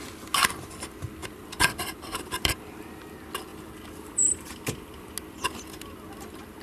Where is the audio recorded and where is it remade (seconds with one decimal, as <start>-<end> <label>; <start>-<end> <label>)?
0.0-1.2 recorded; 1.2-3.1 remade; 3.1-3.5 recorded; 3.5-5.1 remade; 5.1-6.6 recorded